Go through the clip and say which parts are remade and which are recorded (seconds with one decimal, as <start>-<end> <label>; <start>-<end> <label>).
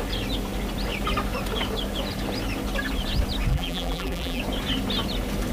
0.0-3.5 recorded; 3.5-4.4 remade; 4.4-5.5 recorded